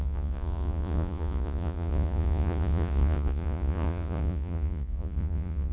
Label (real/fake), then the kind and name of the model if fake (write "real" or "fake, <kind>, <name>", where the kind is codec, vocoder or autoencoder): fake, vocoder, Vocos